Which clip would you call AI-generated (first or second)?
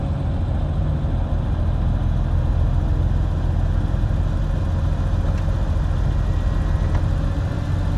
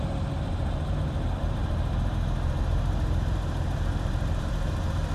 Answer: second